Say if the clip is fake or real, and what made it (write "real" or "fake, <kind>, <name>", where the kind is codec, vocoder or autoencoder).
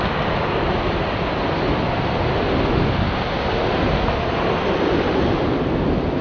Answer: real